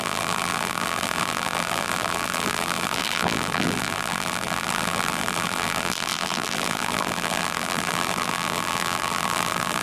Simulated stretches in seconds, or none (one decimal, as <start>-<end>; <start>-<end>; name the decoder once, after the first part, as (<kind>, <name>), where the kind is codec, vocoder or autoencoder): 0.0-9.8 (vocoder, BigVGAN v2)

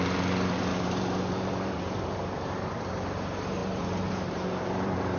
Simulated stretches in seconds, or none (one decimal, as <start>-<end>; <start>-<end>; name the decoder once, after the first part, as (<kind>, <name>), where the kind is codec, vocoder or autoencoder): 0.0-5.2 (vocoder, BigVGAN v2)

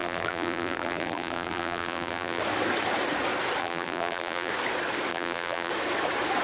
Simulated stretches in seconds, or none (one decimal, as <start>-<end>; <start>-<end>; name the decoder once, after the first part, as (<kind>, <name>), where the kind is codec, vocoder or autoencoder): 0.0-2.4 (vocoder, BigVGAN v2); 3.6-4.5; 5.1-5.7